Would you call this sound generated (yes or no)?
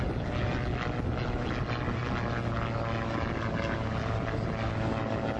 no